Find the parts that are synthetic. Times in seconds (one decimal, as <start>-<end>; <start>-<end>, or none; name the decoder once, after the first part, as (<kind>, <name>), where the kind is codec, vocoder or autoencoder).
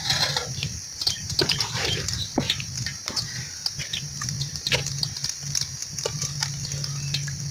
0.4-4.9 (vocoder, BigVGAN v2); 5.8-6.5